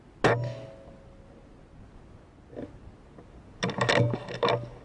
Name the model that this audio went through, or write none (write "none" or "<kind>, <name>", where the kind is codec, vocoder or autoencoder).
none